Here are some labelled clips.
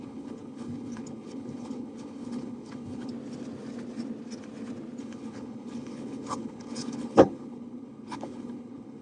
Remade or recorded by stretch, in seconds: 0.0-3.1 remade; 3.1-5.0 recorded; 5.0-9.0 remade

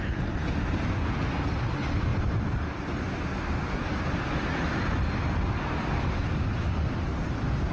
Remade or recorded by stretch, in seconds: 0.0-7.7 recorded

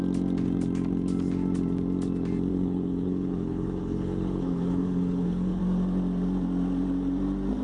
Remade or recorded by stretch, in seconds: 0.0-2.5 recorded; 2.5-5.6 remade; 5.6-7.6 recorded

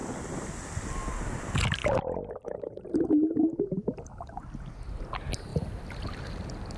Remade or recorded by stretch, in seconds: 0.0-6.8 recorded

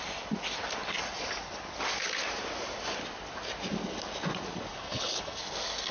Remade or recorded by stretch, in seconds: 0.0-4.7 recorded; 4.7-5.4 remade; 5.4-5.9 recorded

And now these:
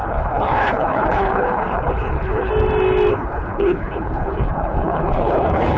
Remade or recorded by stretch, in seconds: 0.0-2.5 remade; 2.5-3.1 recorded; 3.1-5.8 remade